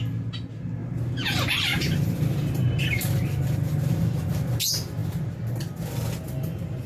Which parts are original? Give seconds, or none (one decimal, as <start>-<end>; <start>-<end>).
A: 0.0-0.8; 4.3-6.9